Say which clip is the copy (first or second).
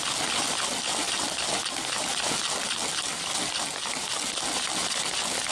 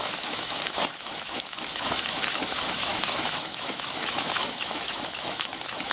second